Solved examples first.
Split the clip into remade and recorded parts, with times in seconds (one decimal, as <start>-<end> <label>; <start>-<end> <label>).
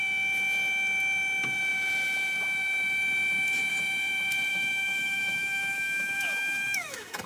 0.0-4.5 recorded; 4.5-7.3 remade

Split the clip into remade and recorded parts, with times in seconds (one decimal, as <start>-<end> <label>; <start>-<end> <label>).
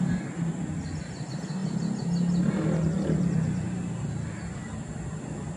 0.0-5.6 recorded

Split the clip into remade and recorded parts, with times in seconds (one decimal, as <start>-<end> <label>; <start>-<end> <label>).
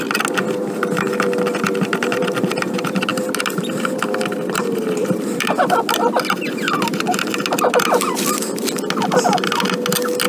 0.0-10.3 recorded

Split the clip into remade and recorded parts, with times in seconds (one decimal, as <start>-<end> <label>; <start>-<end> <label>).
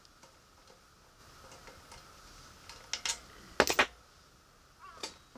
0.0-5.4 recorded